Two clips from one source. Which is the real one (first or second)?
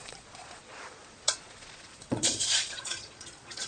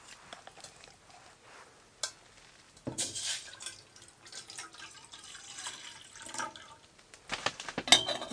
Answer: second